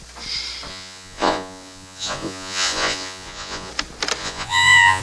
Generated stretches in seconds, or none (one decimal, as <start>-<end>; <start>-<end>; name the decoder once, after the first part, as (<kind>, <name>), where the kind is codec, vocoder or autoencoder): 0.7-3.7 (vocoder, Vocos); 4.2-5.0